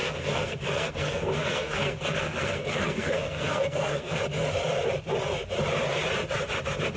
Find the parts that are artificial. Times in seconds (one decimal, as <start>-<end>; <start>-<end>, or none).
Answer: 0.0-4.2